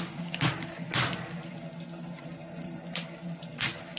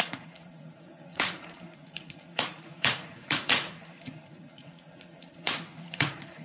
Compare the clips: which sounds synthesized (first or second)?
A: second